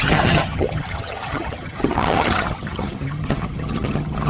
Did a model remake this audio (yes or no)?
yes